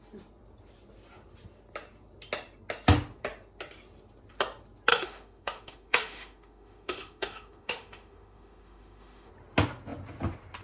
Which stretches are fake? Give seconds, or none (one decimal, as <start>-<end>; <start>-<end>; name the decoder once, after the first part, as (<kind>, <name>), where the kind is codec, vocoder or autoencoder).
4.9-9.3 (autoencoder, DAC-VAE)